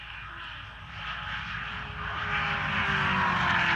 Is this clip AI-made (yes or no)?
no